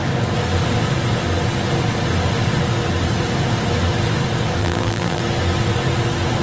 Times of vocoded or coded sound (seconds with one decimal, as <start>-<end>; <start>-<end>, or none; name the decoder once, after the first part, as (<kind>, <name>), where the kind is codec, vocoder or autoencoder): 4.6-5.2 (vocoder, BigVGAN v2)